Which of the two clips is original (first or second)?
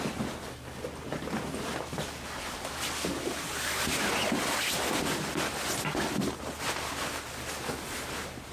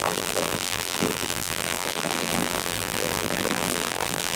first